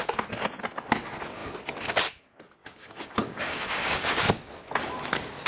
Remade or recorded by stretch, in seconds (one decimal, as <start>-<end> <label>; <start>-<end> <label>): 0.0-2.6 recorded; 2.6-4.2 remade; 4.2-5.5 recorded